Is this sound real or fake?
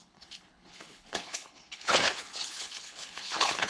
fake